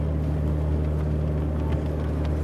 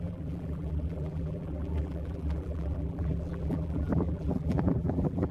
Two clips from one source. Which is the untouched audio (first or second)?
first